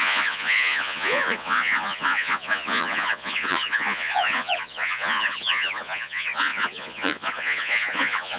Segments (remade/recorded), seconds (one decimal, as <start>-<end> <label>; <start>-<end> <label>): 0.0-8.4 remade